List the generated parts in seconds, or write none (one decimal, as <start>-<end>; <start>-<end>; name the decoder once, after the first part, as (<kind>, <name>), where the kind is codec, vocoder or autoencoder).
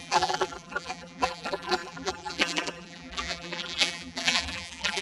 0.0-5.0 (vocoder, BigVGAN v2)